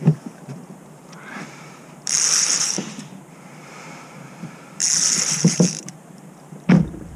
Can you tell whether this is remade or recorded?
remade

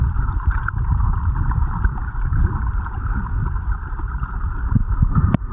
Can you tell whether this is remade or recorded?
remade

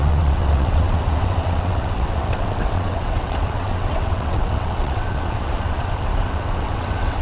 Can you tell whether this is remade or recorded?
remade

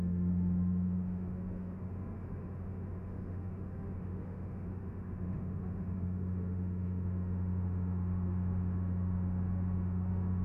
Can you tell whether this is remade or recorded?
remade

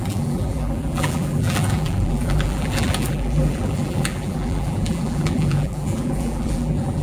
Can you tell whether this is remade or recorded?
remade